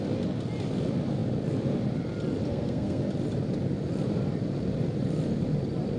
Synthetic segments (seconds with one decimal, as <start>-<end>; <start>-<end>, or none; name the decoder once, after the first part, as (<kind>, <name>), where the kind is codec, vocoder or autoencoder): 2.5-3.0 (codec, SNAC)

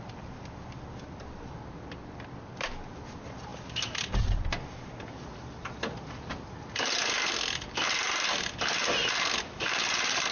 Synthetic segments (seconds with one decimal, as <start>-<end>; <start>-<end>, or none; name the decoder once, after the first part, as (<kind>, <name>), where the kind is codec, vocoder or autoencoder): none

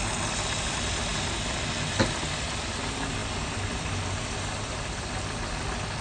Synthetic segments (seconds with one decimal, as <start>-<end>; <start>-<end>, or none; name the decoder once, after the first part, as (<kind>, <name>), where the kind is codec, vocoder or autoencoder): 3.2-5.1 (vocoder, BigVGAN v2)

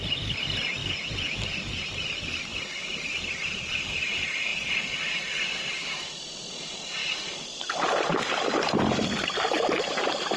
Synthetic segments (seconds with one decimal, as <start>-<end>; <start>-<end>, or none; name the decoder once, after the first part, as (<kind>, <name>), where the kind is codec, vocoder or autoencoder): 0.0-4.5 (vocoder, BigVGAN v2); 6.0-7.0; 9.9-10.4